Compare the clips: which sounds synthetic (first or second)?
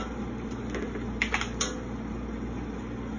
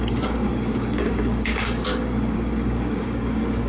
second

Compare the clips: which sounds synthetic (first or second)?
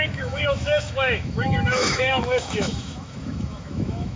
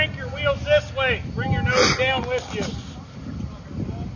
first